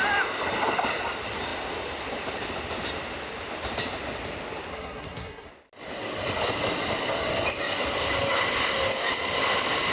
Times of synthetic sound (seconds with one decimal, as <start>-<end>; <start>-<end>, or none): 4.7-5.5